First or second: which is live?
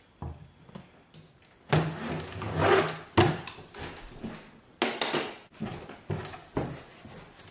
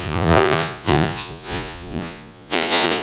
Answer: first